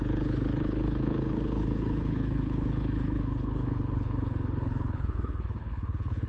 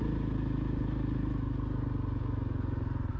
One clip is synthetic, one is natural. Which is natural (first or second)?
second